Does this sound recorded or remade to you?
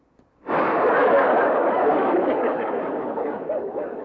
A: remade